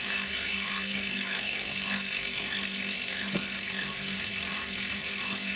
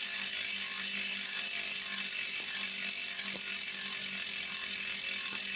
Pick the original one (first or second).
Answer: second